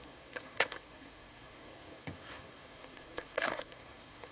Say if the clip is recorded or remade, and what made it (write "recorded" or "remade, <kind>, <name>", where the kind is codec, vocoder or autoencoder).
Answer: remade, codec, SNAC